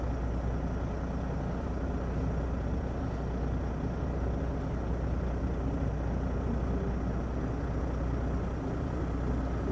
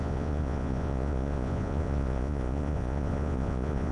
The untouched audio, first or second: first